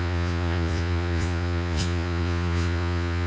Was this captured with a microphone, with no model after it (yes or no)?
no